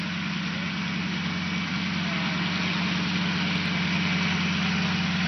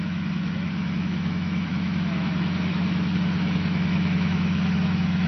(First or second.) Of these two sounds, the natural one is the first